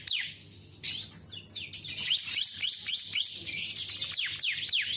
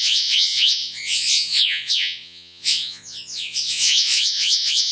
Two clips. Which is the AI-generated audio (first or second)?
second